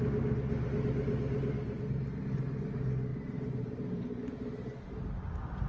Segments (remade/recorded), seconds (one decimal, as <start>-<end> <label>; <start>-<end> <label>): 0.0-3.1 recorded; 3.1-4.3 remade; 4.3-5.7 recorded

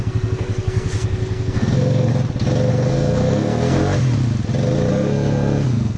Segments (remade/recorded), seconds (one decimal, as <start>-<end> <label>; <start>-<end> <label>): 0.0-2.1 remade; 2.1-2.7 recorded; 2.7-3.8 remade; 3.8-4.9 recorded; 4.9-6.0 remade

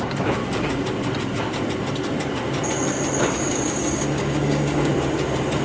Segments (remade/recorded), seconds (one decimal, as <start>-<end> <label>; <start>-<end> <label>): 0.0-0.4 remade; 0.4-3.2 recorded; 3.2-4.9 remade; 4.9-5.6 recorded